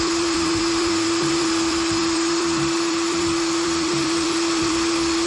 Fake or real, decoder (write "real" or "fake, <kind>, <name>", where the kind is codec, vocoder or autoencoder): fake, vocoder, BigVGAN v2